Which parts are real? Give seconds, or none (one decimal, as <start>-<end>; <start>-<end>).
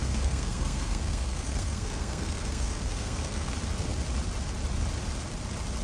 3.5-5.8